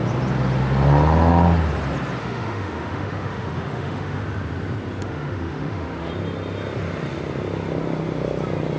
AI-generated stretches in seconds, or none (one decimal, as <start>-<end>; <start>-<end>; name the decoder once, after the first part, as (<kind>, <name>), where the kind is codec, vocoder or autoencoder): 2.2-4.2 (autoencoder, DAC-VAE); 5.0-6.1